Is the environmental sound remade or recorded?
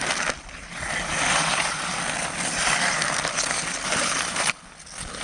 recorded